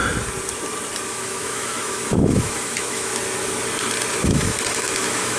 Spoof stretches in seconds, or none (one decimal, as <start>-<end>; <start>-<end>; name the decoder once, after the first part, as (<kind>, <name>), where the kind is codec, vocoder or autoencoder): 1.1-3.1 (autoencoder, DAC-VAE); 4.1-5.4